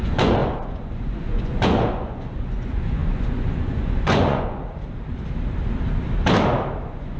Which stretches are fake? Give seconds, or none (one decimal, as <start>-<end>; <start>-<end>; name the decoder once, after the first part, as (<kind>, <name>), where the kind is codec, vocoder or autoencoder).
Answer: 0.0-4.6 (vocoder, Vocos); 6.8-7.2